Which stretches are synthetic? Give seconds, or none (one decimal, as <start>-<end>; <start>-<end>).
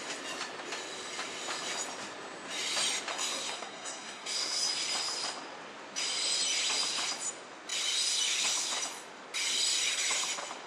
3.1-4.6